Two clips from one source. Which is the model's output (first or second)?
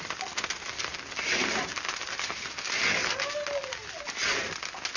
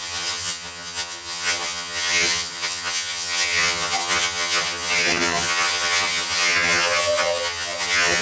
second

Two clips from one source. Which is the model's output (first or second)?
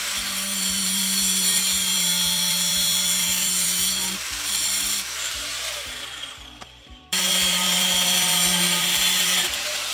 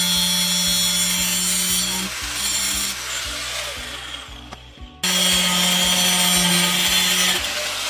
first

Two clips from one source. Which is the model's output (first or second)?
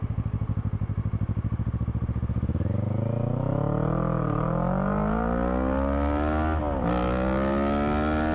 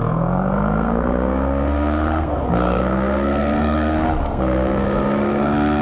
second